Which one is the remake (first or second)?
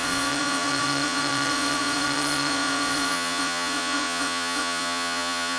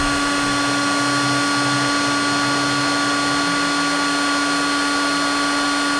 first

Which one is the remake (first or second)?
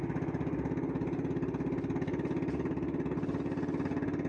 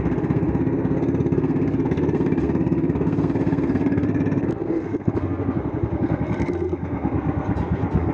second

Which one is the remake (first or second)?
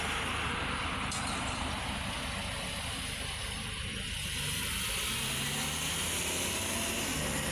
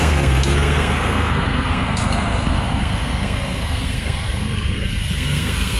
second